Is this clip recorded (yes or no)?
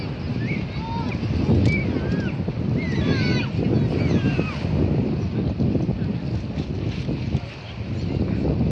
yes